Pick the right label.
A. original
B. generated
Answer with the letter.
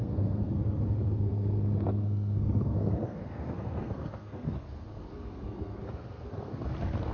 B